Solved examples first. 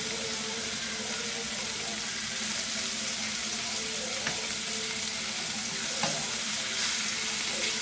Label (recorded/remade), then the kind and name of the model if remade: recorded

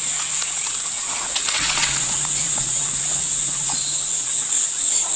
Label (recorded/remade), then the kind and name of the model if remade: remade, vocoder, Vocos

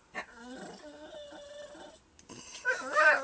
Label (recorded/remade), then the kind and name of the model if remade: recorded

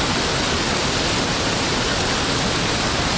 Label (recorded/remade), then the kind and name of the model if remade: recorded